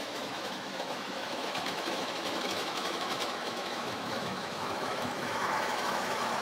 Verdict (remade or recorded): remade